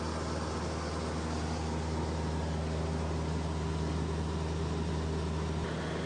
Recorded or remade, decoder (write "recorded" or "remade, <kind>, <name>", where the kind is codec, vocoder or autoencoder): recorded